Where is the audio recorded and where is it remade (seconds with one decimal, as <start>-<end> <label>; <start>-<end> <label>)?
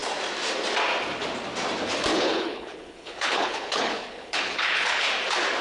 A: 0.0-2.1 recorded; 2.1-5.1 remade; 5.1-5.6 recorded